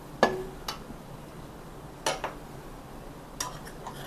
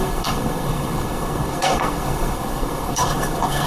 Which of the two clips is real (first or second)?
first